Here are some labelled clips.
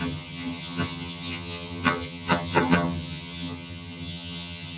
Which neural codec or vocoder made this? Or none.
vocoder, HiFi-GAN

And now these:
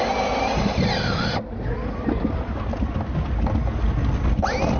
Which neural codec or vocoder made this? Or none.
none